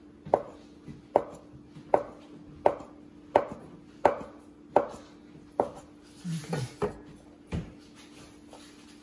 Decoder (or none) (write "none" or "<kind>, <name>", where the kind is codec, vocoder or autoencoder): none